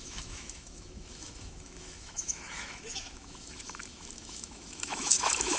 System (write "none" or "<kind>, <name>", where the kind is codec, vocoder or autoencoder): autoencoder, DAC-VAE